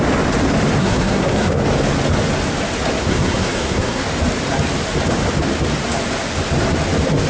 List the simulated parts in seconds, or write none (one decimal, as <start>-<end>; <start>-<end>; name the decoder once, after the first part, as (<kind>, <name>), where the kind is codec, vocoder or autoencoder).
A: 0.8-1.5 (codec, SNAC); 3.0-4.0